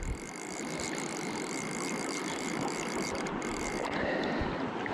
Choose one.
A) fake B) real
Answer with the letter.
A